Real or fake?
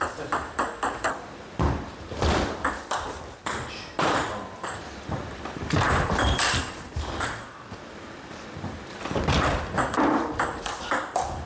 fake